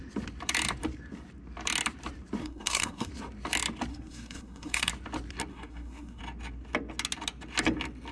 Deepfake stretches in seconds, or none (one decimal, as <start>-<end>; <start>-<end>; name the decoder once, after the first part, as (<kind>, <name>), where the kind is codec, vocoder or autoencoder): 2.4-3.1 (codec, SNAC); 3.9-4.9; 5.5-6.2